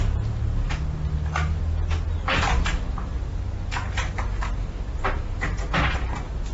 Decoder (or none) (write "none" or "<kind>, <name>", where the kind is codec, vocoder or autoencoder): none